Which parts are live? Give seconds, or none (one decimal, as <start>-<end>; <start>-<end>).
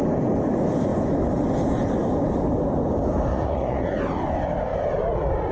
0.0-3.3; 4.0-5.5